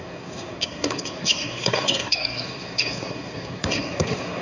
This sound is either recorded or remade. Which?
remade